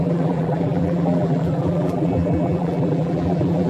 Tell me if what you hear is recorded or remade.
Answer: remade